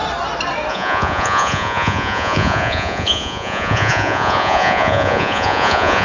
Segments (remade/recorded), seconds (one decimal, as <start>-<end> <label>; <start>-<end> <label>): 0.0-0.7 recorded; 0.7-6.0 remade